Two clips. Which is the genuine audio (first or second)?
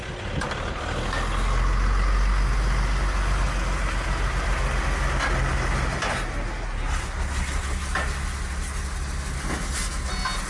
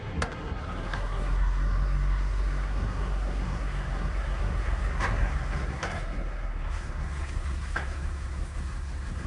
first